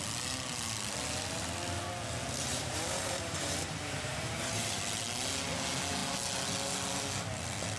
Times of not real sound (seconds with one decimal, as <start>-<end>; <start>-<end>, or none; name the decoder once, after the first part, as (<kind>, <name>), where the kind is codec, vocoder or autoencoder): 2.4-4.8 (vocoder, BigVGAN v2)